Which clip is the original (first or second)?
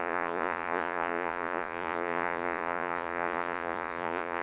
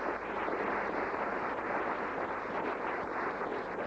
second